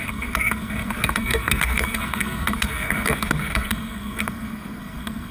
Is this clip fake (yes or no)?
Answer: yes